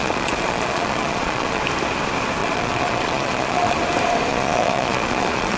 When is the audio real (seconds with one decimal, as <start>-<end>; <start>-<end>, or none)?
1.6-2.4; 3.8-4.3